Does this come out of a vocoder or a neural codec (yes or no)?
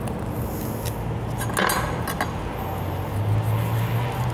no